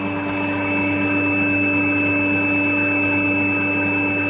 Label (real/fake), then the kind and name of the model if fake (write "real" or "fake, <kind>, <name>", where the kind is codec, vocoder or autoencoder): real